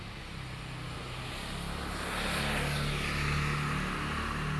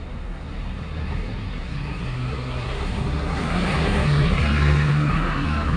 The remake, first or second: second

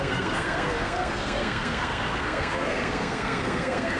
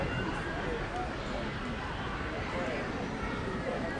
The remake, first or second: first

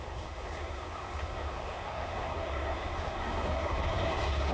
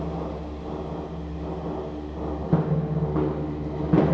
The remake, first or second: first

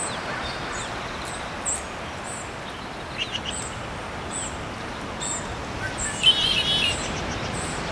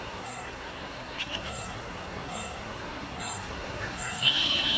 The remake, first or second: second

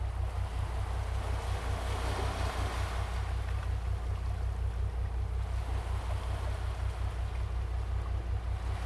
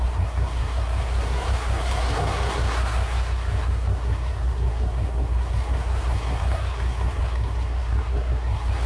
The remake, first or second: second